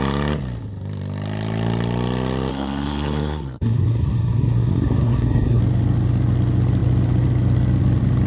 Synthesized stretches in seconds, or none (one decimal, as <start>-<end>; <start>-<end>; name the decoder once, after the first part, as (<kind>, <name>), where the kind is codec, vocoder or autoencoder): 2.5-5.6 (codec, SNAC)